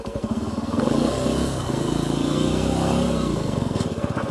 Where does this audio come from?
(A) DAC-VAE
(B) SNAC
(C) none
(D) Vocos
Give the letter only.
B